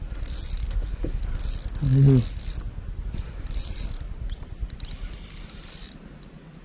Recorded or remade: recorded